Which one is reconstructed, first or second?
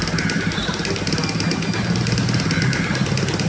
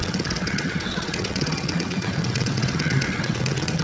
second